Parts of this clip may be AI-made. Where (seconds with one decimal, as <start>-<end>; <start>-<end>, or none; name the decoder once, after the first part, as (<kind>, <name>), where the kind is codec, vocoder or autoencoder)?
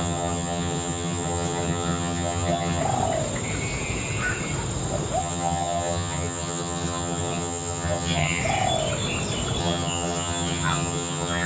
0.0-2.8 (vocoder, HiFi-GAN); 5.2-8.4; 9.6-11.5